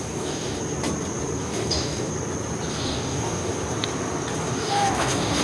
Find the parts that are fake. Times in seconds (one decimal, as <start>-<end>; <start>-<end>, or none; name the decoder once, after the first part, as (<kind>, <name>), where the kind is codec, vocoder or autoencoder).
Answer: 0.0-0.6 (codec, DAC); 1.4-2.1; 2.7-3.5; 4.4-5.4